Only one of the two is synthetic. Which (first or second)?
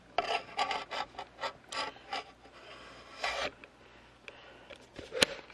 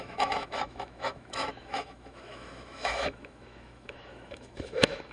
second